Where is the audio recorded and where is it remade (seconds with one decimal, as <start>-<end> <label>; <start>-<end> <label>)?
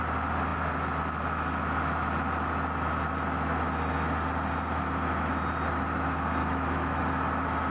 0.0-6.4 recorded; 6.4-7.0 remade; 7.0-7.7 recorded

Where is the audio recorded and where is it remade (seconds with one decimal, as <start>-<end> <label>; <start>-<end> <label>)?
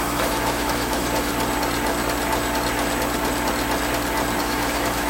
0.0-1.3 remade; 1.3-4.4 recorded; 4.4-5.1 remade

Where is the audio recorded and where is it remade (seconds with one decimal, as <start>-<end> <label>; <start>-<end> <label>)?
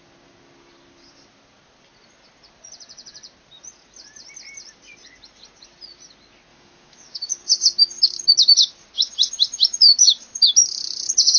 0.0-6.5 recorded; 6.5-7.5 remade; 7.5-11.4 recorded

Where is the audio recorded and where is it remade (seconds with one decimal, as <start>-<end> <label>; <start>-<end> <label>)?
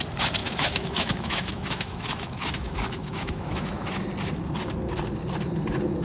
0.0-0.4 recorded; 0.4-4.0 remade; 4.0-6.0 recorded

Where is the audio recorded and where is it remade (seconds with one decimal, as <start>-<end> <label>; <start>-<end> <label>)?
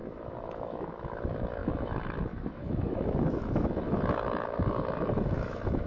0.0-5.9 remade